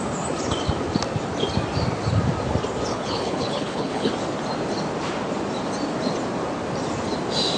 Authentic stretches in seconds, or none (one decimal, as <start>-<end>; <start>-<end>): 0.0-2.9; 4.1-7.6

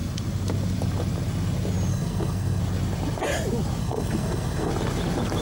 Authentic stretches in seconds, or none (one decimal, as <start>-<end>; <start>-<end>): 0.0-1.9; 2.6-3.8; 4.7-5.4

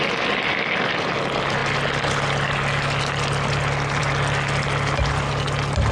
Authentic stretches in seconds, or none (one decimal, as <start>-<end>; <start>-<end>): 0.0-5.9

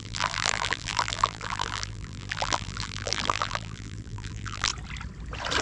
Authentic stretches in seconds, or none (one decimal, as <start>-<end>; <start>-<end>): 4.7-5.6

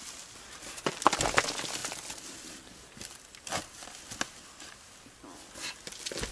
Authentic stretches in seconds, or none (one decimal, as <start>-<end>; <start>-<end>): 0.0-6.3

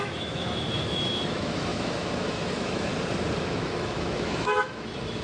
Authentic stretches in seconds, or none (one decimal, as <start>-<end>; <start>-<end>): 2.9-3.4